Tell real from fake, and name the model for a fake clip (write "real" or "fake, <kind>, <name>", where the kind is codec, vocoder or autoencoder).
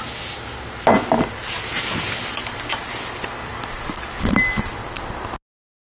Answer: real